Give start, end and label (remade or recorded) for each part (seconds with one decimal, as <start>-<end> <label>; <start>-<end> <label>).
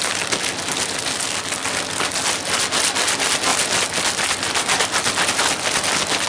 0.0-6.3 recorded